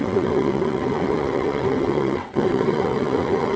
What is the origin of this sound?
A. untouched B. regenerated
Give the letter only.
B